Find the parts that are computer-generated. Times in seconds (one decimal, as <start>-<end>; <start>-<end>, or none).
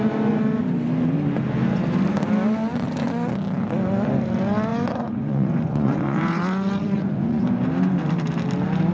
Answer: 4.7-7.4